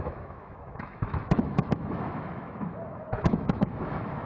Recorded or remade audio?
remade